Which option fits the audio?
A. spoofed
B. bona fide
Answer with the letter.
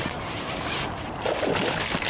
B